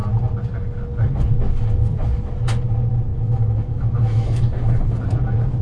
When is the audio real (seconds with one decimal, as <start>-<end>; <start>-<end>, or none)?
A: 0.0-3.1; 5.0-5.6

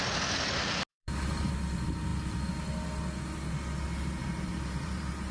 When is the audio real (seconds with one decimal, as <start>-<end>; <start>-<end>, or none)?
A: 0.0-0.9; 1.5-4.2